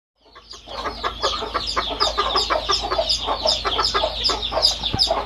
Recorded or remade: recorded